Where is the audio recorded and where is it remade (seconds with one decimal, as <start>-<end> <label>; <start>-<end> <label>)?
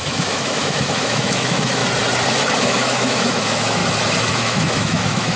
0.0-1.8 remade; 1.8-2.6 recorded; 2.6-3.8 remade; 3.8-4.3 recorded; 4.3-5.4 remade